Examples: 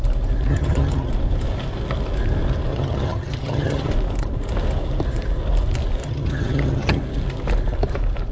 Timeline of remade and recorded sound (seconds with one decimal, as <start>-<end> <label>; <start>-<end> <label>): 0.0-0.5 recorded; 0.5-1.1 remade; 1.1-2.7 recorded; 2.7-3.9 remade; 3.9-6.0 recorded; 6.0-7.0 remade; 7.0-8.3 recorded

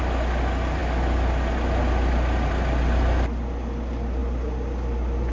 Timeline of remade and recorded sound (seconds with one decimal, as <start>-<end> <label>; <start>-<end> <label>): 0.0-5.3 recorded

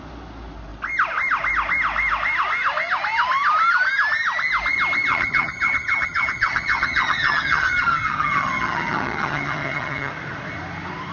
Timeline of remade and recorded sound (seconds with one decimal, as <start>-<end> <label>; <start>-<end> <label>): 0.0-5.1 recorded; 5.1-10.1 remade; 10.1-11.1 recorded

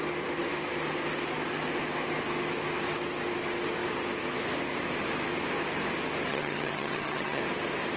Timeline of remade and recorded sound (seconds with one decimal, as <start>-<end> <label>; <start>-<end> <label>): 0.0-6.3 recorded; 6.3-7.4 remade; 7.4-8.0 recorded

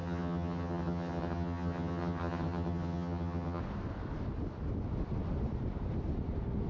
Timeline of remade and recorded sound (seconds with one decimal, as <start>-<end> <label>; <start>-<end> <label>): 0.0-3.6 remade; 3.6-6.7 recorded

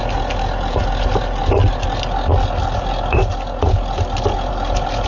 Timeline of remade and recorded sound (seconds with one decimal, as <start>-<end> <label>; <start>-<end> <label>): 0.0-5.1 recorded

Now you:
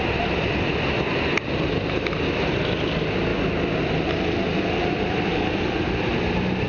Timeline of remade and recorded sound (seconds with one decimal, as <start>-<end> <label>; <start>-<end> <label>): 0.0-6.7 recorded

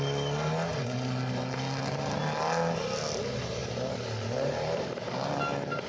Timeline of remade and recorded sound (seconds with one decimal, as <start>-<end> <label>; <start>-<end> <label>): 0.0-5.9 recorded